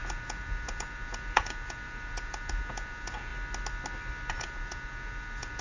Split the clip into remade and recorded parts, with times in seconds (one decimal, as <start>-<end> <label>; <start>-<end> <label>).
0.0-3.3 remade; 3.3-4.3 recorded; 4.3-5.6 remade